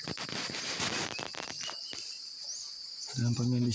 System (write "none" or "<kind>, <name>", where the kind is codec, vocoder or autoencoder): none